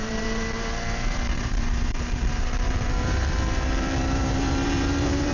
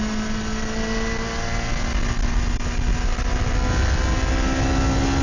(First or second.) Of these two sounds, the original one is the second